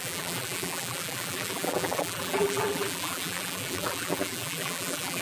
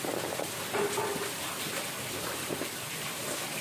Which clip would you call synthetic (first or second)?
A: first